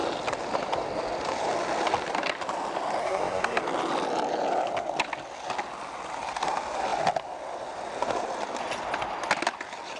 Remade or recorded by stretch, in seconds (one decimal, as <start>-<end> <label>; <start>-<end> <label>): 0.0-3.0 recorded; 3.0-3.6 remade; 3.6-10.0 recorded